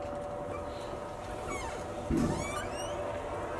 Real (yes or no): yes